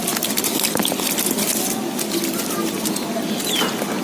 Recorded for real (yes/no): yes